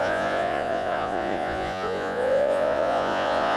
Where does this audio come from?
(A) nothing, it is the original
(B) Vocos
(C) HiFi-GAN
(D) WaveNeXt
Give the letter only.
B